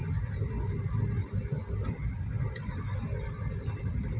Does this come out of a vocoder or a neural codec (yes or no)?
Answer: no